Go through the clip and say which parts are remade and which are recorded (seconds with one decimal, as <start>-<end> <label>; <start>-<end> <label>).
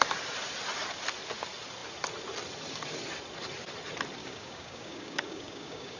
0.0-4.2 recorded; 4.2-6.0 remade